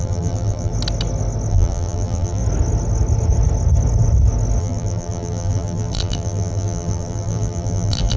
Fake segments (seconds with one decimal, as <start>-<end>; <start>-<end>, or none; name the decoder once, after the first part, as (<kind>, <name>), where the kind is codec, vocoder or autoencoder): 0.0-0.7 (vocoder, BigVGAN v2); 1.5-2.4; 4.6-8.2